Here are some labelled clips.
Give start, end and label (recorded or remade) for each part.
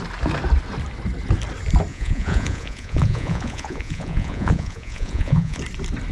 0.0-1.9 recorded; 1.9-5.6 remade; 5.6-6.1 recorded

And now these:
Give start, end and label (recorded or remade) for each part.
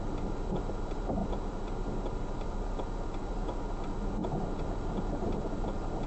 0.0-6.1 recorded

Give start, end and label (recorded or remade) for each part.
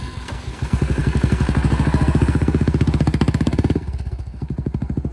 0.0-5.1 remade